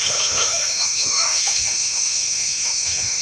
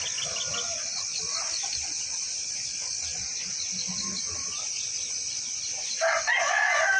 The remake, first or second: first